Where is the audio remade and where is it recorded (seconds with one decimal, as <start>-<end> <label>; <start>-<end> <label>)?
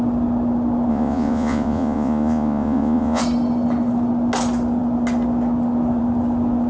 0.0-0.9 recorded; 0.9-3.2 remade; 3.2-6.7 recorded